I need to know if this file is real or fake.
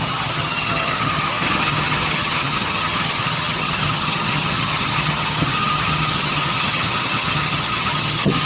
fake